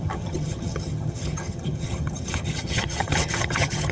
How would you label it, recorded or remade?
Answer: remade